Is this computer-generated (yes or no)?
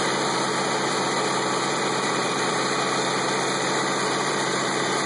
yes